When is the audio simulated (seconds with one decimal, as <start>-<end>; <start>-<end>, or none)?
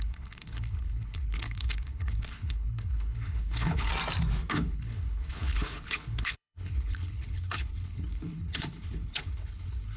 0.0-3.9; 4.5-10.0